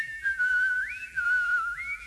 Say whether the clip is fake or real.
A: fake